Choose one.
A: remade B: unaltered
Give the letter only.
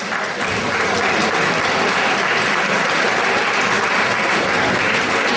A